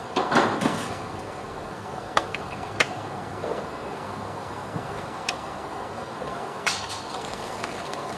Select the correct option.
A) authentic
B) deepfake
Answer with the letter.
B